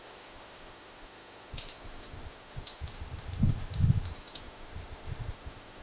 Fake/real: fake